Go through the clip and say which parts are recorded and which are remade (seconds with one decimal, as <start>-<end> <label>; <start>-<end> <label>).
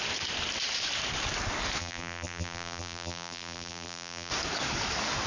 0.0-1.8 recorded; 1.8-4.3 remade; 4.3-5.3 recorded